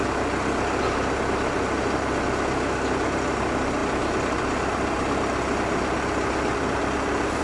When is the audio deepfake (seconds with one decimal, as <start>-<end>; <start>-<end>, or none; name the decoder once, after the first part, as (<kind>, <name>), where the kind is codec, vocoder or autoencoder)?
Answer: none